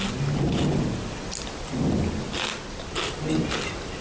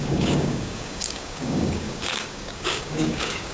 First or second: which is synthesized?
second